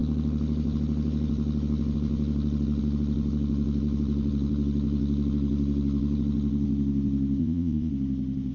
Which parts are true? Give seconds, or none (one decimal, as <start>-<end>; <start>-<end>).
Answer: 0.0-7.4; 7.9-8.5